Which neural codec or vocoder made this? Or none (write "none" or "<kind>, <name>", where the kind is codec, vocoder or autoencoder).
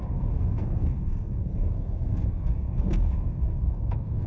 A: codec, SNAC